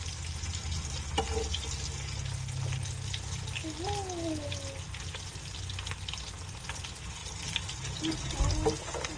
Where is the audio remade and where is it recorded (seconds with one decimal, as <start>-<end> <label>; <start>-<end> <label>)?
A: 0.0-9.2 recorded